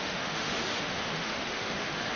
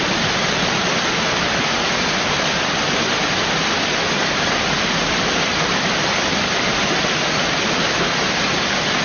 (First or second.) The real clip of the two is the second